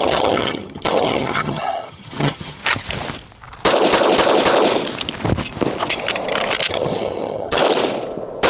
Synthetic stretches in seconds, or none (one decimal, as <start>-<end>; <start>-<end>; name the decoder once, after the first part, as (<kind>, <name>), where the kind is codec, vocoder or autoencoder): 0.0-2.6 (vocoder, HiFi-GAN); 6.7-7.6